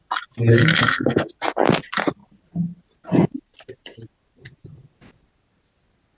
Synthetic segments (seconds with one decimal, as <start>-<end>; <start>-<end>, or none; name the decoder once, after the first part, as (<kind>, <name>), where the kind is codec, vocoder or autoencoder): 0.5-1.3 (codec, SNAC)